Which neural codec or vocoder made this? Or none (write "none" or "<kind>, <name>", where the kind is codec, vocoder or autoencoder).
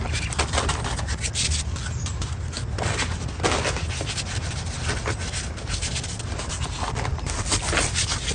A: none